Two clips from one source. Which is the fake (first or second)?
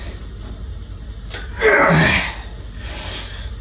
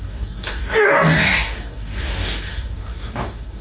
second